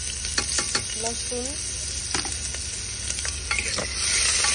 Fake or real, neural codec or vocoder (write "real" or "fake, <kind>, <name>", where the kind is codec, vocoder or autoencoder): real